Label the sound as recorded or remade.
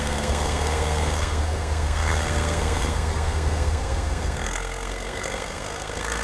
remade